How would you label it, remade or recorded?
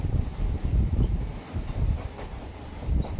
recorded